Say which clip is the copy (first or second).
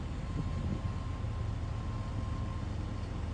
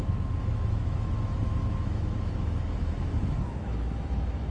second